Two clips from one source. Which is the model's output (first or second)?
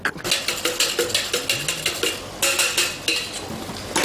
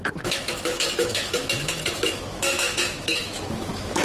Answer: second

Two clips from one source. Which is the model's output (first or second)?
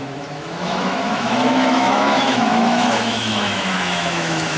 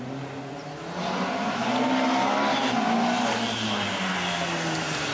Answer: first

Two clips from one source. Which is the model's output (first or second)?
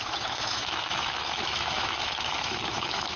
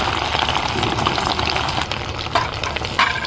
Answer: first